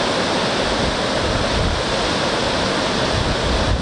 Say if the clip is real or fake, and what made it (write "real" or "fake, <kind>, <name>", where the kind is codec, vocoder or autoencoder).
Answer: real